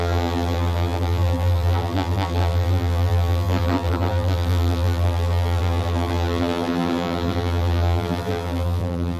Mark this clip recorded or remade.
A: remade